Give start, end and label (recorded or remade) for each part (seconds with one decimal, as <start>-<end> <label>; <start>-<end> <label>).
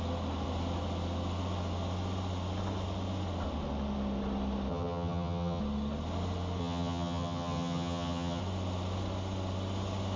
0.0-4.7 recorded; 4.7-5.6 remade; 5.6-6.6 recorded; 6.6-8.4 remade; 8.4-10.2 recorded